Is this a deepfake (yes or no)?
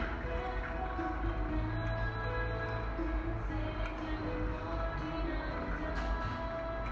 no